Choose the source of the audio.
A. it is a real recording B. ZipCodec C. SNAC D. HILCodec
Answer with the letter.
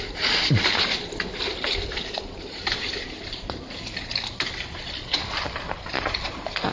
A